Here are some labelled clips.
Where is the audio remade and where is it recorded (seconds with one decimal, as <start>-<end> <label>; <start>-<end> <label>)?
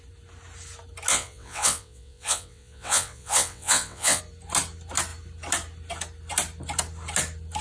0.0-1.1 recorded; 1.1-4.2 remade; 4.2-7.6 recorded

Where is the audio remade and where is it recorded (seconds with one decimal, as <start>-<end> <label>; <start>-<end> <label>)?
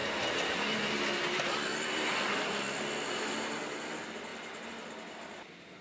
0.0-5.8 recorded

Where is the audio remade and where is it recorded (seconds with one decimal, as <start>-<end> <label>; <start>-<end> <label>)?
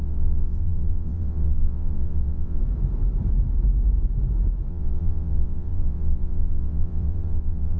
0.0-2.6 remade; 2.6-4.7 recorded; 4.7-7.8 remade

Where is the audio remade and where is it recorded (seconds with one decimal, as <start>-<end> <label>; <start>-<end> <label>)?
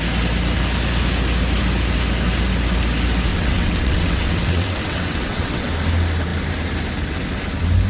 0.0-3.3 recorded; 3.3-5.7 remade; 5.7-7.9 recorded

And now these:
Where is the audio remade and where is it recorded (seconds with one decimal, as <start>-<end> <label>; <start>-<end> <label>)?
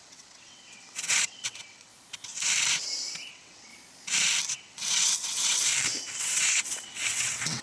0.0-1.9 remade; 1.9-3.3 recorded; 3.3-3.7 remade; 3.7-4.5 recorded; 4.5-5.7 remade; 5.7-6.2 recorded; 6.2-7.6 remade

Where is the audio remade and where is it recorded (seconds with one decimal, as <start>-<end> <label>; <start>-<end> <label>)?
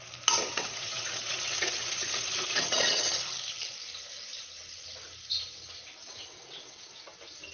0.0-0.5 recorded; 0.5-3.1 remade; 3.1-6.0 recorded; 6.0-6.9 remade; 6.9-7.5 recorded